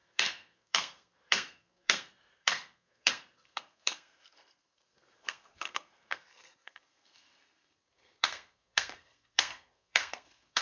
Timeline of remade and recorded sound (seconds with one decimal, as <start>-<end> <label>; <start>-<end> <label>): 0.0-10.6 remade